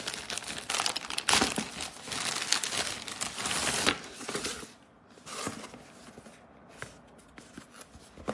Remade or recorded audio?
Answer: recorded